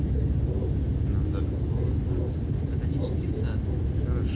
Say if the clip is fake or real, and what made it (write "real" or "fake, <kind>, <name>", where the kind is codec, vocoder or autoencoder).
real